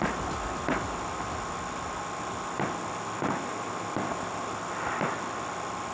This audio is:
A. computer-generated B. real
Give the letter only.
B